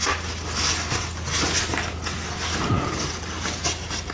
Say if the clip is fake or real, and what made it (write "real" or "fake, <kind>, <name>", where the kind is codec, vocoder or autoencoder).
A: real